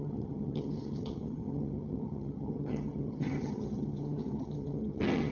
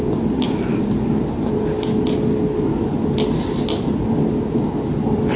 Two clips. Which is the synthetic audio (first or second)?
first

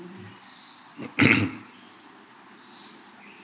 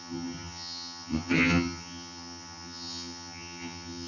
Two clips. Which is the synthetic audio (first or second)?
second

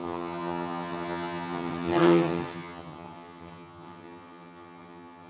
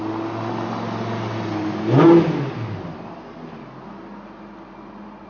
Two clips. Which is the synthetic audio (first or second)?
first